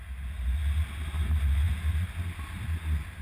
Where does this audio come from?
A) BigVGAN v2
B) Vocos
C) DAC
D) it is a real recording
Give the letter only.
D